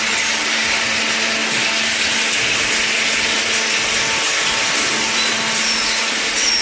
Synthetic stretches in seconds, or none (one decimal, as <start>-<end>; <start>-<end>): none